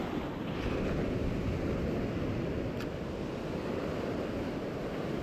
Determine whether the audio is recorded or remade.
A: recorded